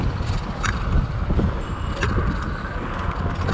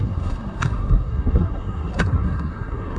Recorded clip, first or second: first